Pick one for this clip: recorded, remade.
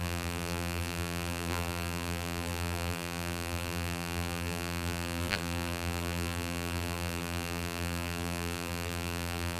remade